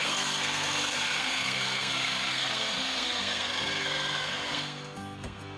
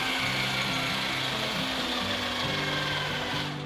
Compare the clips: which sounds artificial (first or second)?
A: first